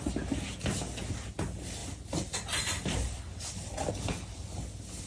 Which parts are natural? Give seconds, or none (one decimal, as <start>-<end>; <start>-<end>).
0.0-1.8; 3.9-5.1